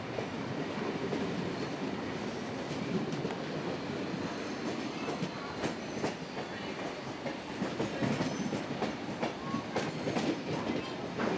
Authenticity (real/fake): real